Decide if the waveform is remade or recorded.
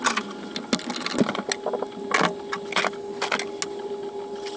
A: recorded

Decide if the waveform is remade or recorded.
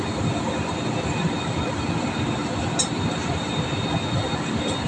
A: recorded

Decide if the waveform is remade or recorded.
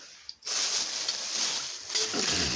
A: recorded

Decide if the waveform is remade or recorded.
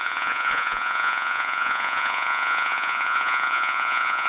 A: remade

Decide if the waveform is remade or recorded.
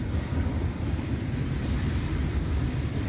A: recorded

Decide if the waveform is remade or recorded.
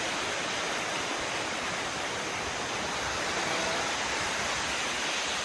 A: recorded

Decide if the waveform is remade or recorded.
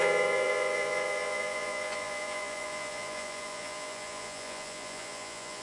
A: remade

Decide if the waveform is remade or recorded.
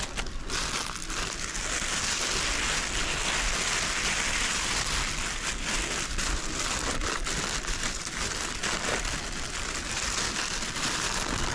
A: recorded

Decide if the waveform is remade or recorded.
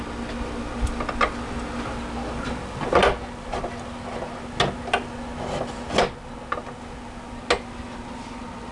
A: recorded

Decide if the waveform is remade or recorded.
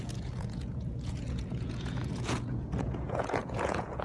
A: remade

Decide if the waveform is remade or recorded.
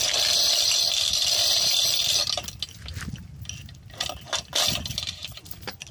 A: recorded